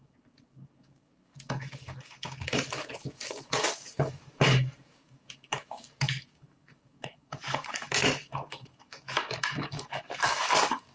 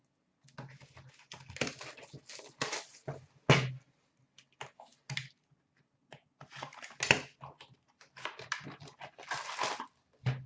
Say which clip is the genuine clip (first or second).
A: second